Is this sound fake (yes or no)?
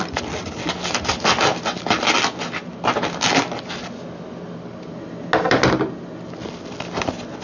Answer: no